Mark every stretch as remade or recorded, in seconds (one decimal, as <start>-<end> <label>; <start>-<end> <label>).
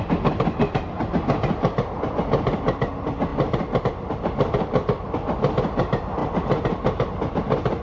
0.0-7.8 recorded